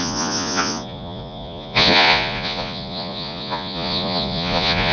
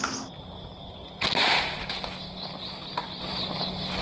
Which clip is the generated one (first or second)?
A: first